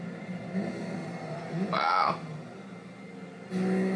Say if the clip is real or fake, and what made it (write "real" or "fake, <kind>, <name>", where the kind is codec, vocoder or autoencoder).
real